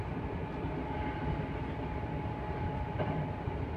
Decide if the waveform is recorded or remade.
recorded